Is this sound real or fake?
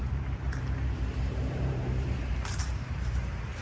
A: fake